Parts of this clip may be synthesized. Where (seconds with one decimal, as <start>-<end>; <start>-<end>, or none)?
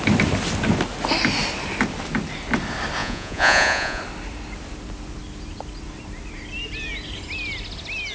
3.0-4.0